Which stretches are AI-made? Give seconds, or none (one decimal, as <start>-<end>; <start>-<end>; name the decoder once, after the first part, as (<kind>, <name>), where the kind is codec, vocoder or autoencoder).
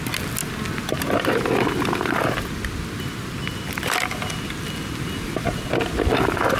none